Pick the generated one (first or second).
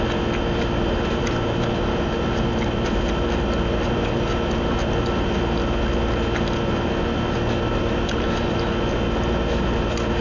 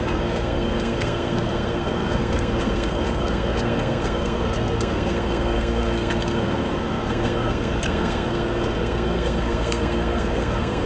second